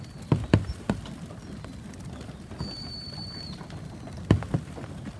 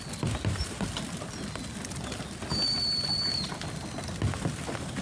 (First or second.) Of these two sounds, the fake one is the first